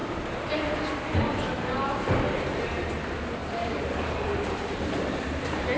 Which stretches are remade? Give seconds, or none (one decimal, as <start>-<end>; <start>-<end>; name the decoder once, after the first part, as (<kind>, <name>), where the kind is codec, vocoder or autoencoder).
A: 0.0-0.8 (vocoder, BigVGAN v2); 3.4-5.8